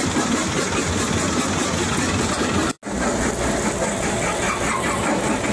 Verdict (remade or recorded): recorded